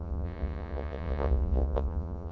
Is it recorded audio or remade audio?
remade